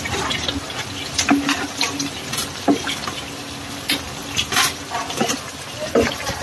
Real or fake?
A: real